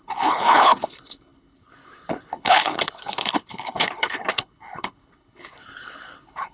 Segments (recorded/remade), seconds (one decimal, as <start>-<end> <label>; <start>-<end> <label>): 0.0-6.5 remade